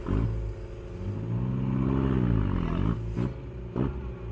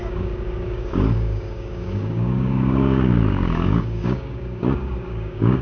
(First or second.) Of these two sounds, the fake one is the second